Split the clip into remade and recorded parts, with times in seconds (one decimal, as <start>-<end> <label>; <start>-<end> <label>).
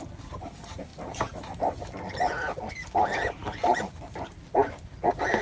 0.0-5.4 recorded